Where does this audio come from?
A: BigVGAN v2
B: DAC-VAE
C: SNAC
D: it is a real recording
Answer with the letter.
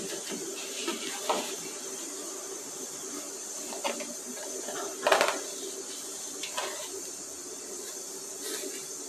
D